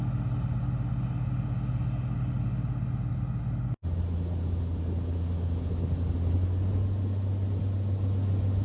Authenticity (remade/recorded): recorded